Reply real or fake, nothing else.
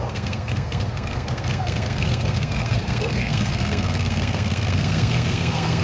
fake